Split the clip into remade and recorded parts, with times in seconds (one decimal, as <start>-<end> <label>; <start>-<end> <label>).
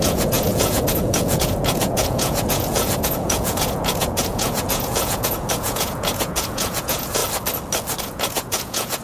0.0-7.2 remade; 7.2-8.0 recorded; 8.0-9.0 remade